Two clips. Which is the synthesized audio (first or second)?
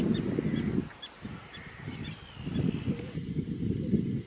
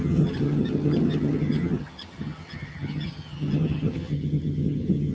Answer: second